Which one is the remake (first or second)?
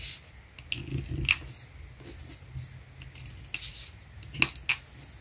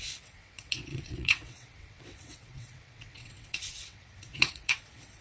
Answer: second